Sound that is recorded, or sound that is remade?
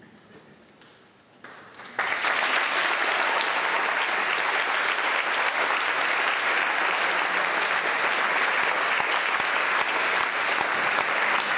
recorded